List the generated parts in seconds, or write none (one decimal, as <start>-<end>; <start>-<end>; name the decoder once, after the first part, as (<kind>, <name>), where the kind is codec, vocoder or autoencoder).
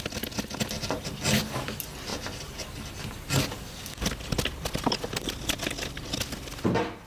none